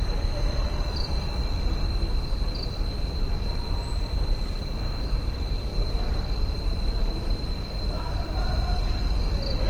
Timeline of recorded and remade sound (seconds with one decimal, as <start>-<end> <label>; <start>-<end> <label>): 0.0-5.7 recorded; 5.7-9.0 remade; 9.0-9.7 recorded